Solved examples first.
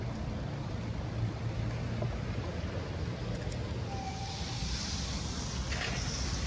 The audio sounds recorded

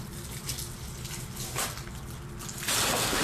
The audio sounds recorded